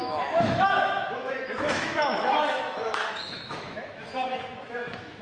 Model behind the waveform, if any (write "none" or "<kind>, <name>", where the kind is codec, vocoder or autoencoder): autoencoder, DAC-VAE